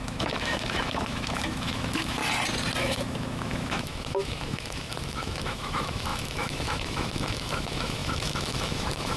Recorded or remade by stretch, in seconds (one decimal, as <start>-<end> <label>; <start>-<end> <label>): 0.0-2.2 remade; 2.2-2.8 recorded; 2.8-9.2 remade

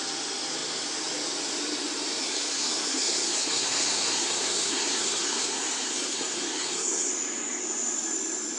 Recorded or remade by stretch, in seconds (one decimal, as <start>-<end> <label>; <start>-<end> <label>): 0.0-2.2 recorded; 2.2-7.1 remade; 7.1-8.6 recorded

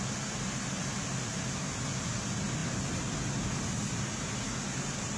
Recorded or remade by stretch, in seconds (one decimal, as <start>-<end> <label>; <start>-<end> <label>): 0.0-5.2 recorded

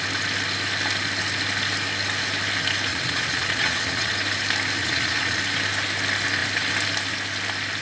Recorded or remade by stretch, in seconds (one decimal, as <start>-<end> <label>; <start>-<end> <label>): 0.0-2.9 recorded; 2.9-4.1 remade; 4.1-4.8 recorded; 4.8-5.4 remade; 5.4-7.8 recorded

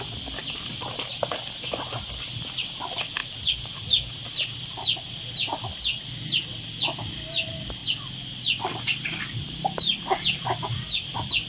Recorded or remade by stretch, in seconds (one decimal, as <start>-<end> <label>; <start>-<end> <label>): 0.0-11.5 recorded

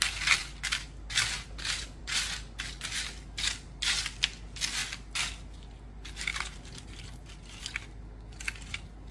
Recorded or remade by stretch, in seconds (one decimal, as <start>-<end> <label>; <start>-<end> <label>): 0.0-6.3 recorded; 6.3-7.6 remade; 7.6-9.1 recorded

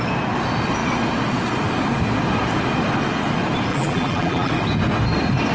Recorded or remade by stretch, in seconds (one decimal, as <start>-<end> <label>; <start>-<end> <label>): 0.0-3.7 recorded; 3.7-4.5 remade; 4.5-5.5 recorded

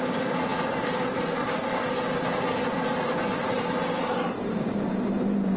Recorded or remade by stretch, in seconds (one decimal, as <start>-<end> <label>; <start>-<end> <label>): 0.0-5.6 recorded